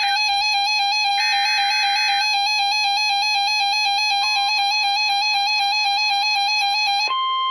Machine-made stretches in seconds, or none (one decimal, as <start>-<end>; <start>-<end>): 0.0-1.1; 4.5-7.5